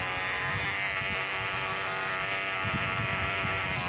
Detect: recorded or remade remade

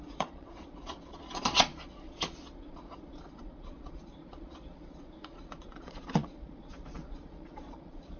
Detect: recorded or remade remade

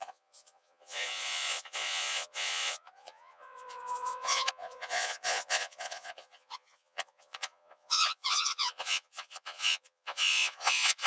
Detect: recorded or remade remade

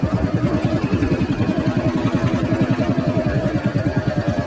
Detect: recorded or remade recorded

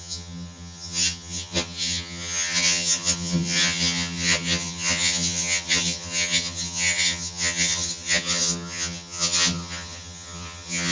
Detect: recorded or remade remade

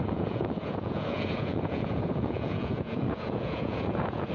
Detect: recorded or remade remade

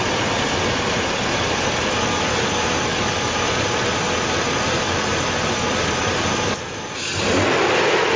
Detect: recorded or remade recorded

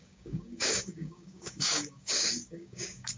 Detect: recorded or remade remade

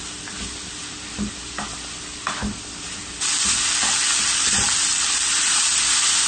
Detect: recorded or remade recorded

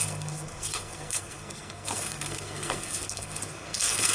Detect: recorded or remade remade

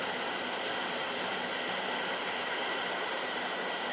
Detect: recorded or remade recorded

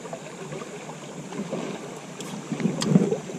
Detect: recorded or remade recorded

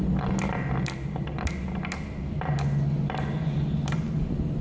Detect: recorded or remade recorded